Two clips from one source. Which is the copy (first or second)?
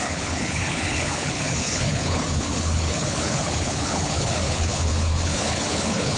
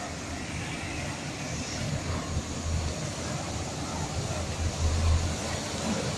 first